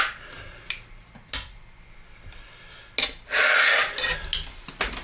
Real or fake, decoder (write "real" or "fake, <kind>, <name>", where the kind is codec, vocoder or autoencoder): real